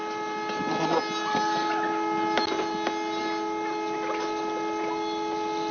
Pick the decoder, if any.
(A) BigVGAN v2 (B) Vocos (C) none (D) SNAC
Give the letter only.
C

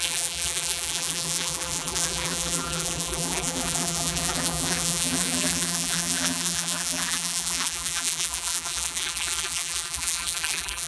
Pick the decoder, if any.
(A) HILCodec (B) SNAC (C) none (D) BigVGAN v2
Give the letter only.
D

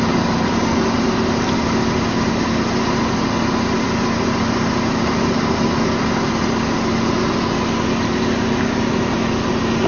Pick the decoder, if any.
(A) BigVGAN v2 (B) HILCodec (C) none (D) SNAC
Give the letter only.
C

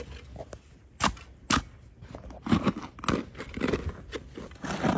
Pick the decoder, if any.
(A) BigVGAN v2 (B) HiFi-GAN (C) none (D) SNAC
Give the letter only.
C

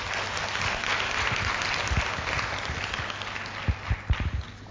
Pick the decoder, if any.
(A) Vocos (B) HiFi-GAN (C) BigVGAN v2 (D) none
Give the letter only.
D